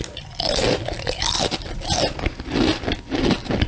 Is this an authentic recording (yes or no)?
yes